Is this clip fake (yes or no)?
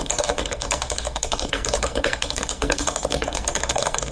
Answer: yes